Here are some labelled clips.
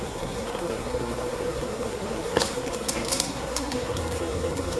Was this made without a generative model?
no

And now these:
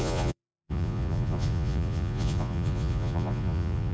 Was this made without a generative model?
no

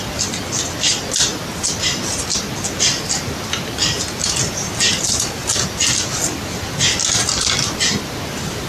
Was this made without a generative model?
yes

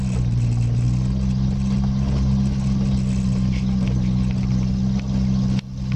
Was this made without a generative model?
yes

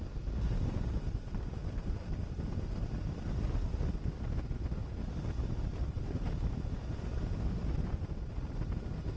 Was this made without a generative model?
yes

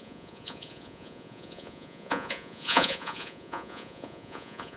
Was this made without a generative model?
no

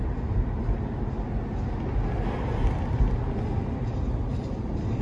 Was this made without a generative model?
yes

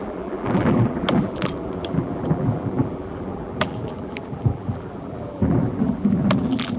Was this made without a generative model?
no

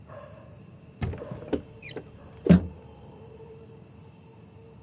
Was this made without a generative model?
yes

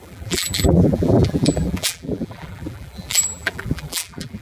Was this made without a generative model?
no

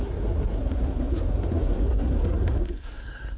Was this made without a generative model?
no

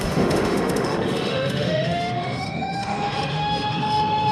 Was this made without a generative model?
no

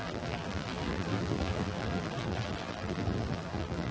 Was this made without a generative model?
no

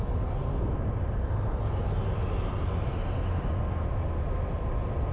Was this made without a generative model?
yes